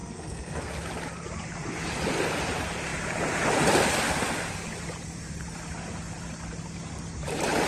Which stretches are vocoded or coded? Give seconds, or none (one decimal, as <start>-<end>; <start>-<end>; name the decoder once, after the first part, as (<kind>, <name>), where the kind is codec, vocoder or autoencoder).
0.0-0.7 (codec, SNAC)